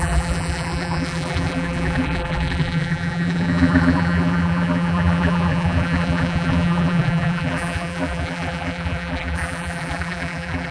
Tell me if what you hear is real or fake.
fake